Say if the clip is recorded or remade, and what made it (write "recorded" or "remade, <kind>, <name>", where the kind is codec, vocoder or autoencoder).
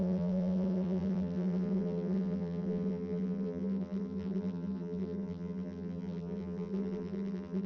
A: remade, vocoder, BigVGAN v2